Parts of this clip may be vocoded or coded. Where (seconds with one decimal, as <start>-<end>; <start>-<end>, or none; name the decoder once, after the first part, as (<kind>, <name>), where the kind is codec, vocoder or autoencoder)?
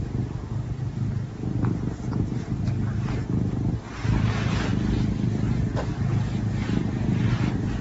none